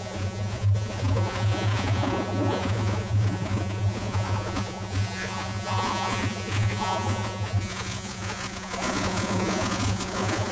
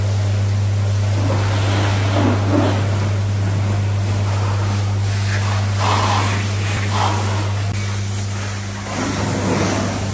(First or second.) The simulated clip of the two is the first